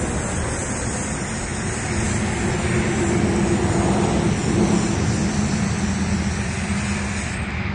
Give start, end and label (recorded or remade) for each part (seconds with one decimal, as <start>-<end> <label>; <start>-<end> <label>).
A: 0.0-7.7 recorded